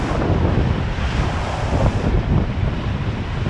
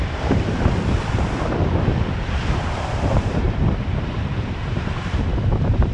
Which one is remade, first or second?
second